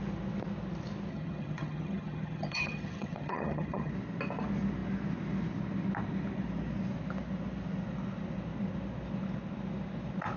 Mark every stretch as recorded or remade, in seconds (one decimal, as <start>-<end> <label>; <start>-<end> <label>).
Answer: 0.0-1.1 recorded; 1.1-3.9 remade; 3.9-10.4 recorded